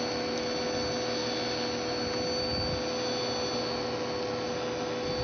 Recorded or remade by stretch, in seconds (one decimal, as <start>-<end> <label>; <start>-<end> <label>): 0.0-5.2 recorded